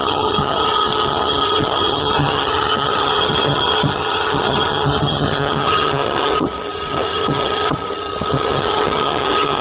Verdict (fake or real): fake